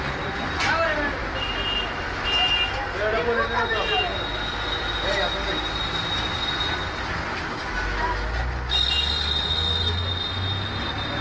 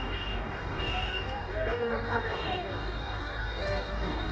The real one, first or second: first